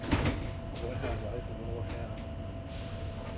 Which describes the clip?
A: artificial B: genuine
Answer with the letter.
B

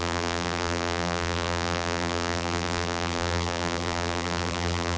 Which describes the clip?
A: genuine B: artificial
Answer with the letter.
B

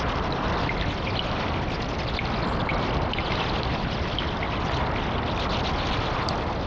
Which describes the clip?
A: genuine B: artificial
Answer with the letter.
B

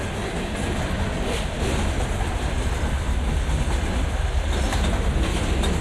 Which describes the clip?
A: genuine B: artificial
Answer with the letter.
B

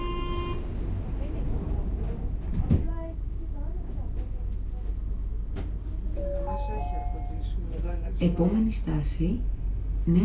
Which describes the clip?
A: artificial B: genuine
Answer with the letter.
B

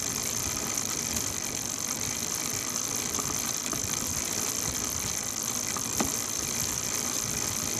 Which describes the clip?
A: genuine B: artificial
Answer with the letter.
B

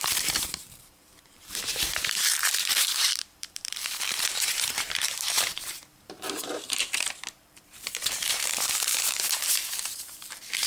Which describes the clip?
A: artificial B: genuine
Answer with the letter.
A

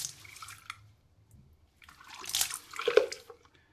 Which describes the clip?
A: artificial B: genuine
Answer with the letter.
B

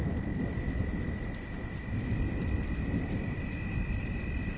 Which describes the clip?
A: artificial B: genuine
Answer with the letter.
B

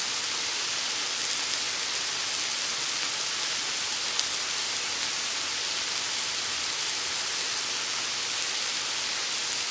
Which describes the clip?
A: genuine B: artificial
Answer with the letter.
A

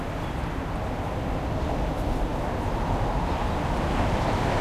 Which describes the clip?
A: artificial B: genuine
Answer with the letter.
B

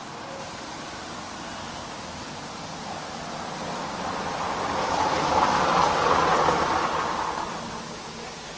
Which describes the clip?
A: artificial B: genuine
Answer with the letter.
B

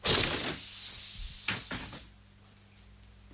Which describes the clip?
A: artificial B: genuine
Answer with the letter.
B